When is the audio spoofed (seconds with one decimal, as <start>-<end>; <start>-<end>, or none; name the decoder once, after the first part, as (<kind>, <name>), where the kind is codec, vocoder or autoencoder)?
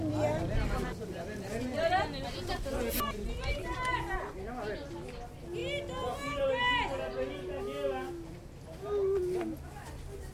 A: none